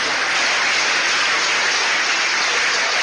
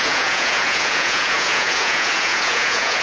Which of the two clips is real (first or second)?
first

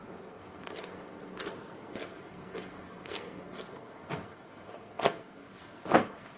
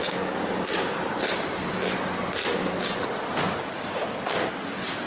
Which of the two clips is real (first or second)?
second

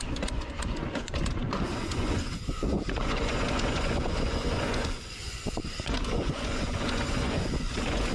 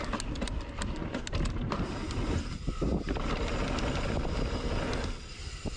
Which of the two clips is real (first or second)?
second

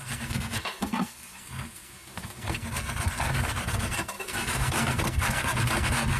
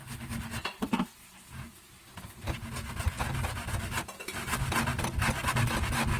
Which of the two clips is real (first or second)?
second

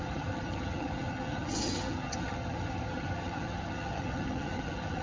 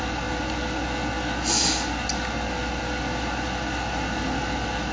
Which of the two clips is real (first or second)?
second